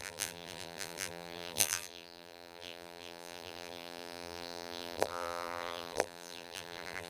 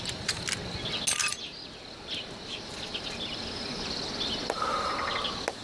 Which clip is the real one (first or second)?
second